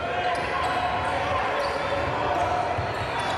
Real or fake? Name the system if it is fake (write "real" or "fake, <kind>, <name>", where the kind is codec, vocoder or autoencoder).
real